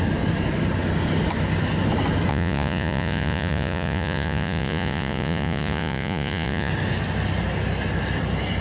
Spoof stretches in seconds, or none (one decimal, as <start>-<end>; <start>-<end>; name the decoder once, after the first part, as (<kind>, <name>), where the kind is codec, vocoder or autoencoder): 2.3-6.7 (vocoder, Vocos)

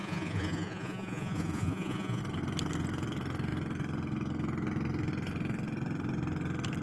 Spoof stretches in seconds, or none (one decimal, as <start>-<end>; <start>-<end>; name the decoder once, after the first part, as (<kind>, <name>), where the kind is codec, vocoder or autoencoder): 0.0-2.2 (vocoder, Vocos)

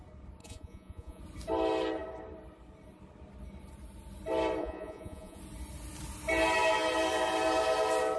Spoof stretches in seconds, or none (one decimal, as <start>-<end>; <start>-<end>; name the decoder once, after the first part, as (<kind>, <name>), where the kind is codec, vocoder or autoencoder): 0.4-1.2 (vocoder, Vocos); 4.6-5.4

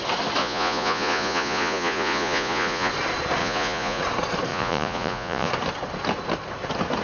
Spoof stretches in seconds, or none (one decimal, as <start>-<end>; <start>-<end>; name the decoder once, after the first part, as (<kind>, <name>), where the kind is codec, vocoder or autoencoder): 0.4-2.9 (vocoder, Vocos); 3.4-4.0; 4.5-5.5

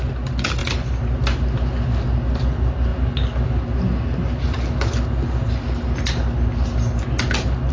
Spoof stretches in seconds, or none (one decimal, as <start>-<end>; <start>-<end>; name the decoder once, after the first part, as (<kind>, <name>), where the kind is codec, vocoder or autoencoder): none

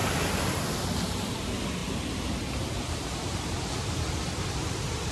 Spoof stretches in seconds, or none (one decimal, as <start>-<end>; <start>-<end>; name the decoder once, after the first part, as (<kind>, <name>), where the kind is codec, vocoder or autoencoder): none

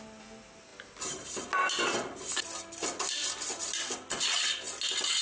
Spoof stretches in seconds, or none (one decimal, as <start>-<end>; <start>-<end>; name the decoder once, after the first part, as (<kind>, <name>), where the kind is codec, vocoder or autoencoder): none